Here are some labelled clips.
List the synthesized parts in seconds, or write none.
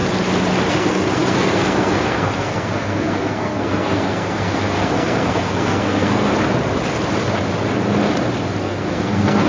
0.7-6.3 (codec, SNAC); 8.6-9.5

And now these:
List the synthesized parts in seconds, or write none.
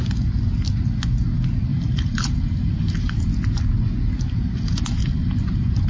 1.7-3.3 (vocoder, BigVGAN v2); 5.0-5.9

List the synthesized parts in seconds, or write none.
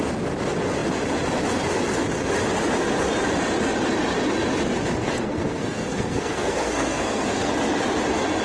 5.0-7.5 (codec, SNAC)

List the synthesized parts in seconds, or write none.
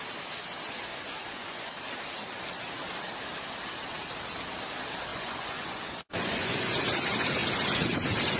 0.9-1.7 (vocoder, Vocos); 5.1-6.8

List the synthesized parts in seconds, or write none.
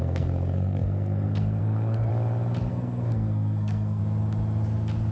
0.0-2.1 (codec, SNAC); 2.7-4.0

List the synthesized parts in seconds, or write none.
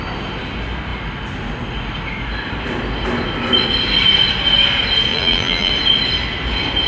5.1-5.7 (vocoder, BigVGAN v2)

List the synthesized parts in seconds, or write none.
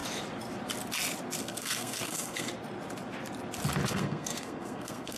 1.4-2.5 (codec, SNAC); 3.9-5.2